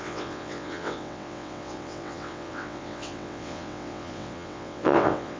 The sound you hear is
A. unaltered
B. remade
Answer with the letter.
B